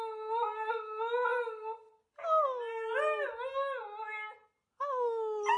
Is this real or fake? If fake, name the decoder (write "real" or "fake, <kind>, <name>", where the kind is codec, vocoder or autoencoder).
real